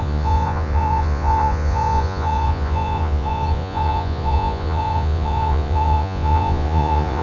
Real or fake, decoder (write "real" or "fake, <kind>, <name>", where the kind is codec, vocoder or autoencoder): fake, vocoder, Vocos